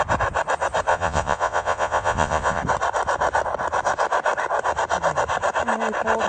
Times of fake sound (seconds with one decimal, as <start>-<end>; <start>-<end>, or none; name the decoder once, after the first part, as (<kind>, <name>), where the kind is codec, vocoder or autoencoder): 0.9-2.6 (vocoder, Vocos)